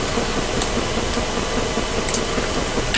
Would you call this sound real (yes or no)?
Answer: yes